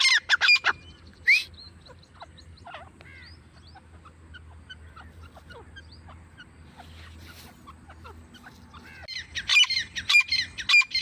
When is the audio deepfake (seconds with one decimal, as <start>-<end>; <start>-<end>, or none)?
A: 9.5-10.2